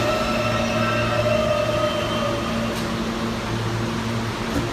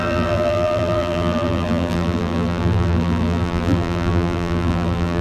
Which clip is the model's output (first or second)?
second